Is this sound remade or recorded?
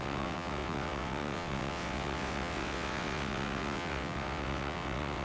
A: remade